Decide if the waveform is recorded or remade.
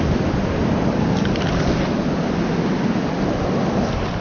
recorded